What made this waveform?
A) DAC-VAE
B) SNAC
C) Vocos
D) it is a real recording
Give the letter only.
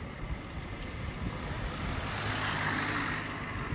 D